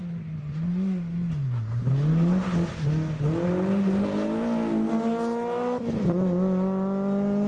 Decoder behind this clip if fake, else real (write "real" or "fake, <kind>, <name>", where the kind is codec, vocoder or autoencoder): real